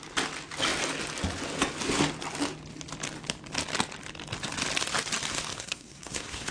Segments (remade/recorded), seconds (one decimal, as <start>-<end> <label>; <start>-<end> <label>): 0.0-5.5 recorded; 5.5-6.5 remade